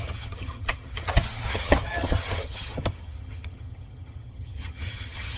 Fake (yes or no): yes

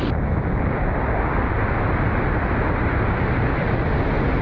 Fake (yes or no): no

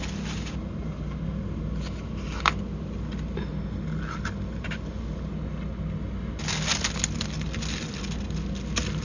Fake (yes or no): no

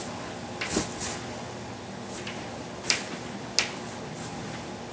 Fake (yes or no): no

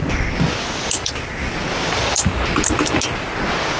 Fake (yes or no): no